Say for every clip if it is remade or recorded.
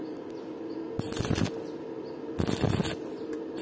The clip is recorded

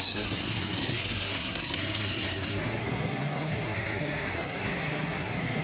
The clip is remade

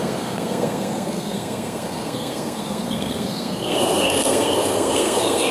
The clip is remade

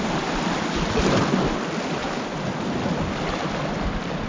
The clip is recorded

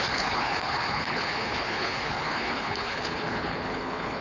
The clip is remade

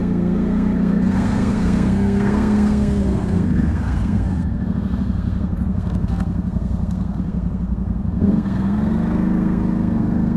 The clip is remade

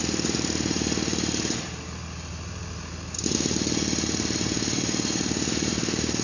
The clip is recorded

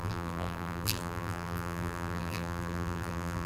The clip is remade